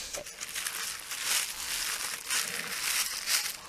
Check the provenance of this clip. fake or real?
real